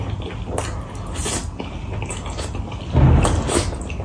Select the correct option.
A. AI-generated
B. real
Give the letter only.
B